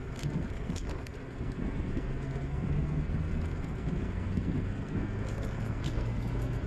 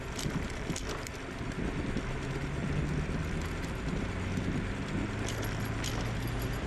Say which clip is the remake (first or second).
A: first